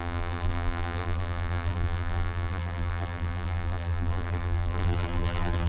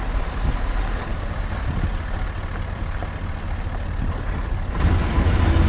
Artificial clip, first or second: first